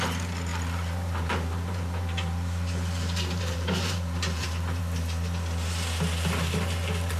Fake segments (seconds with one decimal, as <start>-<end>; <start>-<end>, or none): 0.5-4.8